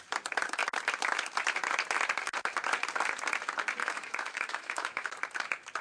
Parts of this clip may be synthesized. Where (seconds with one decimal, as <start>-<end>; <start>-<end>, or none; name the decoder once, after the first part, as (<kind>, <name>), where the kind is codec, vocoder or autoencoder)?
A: 3.8-5.1 (autoencoder, DAC-VAE)